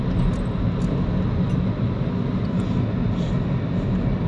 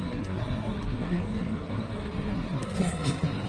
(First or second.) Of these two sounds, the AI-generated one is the second